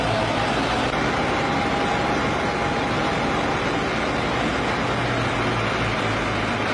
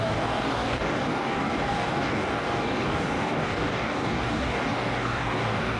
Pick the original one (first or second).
first